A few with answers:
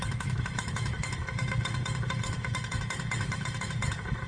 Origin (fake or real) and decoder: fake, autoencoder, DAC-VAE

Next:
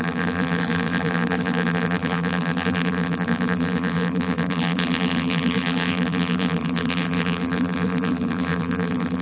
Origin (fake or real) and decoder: fake, vocoder, BigVGAN v2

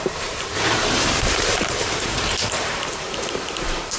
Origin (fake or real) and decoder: fake, vocoder, BigVGAN v2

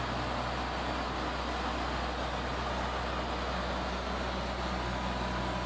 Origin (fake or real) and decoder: real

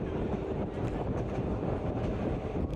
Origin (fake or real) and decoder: real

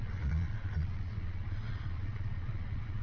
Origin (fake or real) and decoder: fake, vocoder, Vocos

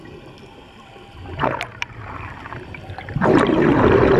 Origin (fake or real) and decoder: fake, vocoder, BigVGAN v2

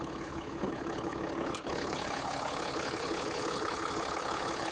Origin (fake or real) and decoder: fake, codec, HILCodec